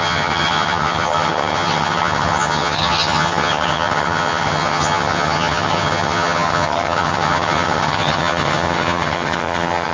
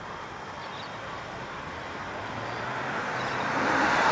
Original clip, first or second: second